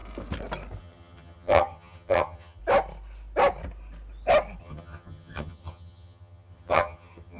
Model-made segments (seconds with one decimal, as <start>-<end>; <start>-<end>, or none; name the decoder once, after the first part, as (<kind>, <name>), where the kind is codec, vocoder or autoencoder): 0.8-2.6 (vocoder, HiFi-GAN); 4.6-7.4